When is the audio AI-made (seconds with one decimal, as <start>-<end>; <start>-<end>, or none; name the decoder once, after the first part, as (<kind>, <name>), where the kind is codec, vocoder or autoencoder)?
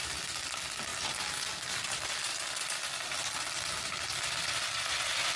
none